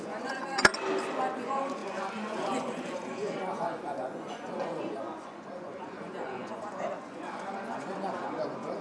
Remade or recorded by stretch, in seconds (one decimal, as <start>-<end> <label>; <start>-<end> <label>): 0.0-0.7 remade; 0.7-1.4 recorded; 1.4-8.8 remade